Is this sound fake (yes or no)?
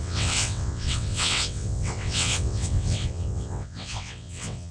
yes